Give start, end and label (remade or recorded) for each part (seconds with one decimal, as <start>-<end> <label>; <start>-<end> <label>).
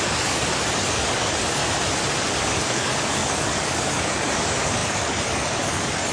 0.0-1.6 remade; 1.6-2.4 recorded; 2.4-6.1 remade